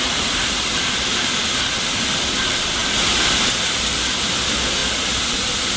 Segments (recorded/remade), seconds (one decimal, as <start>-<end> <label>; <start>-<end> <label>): 0.0-5.8 recorded